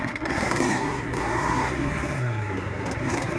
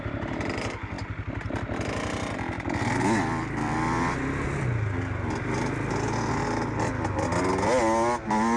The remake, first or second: first